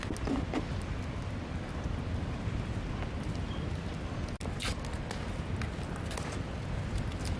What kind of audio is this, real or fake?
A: real